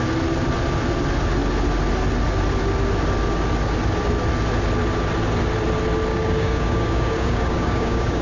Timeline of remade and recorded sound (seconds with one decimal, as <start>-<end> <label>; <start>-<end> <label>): 0.0-6.1 recorded; 6.1-8.2 remade